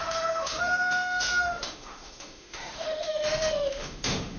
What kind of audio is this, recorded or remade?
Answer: remade